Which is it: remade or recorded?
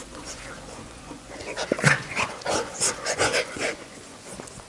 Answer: remade